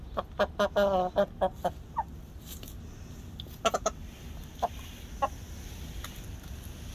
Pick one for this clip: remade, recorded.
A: recorded